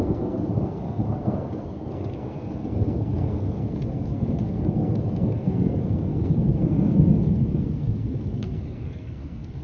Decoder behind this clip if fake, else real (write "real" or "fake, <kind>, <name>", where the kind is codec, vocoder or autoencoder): fake, codec, SNAC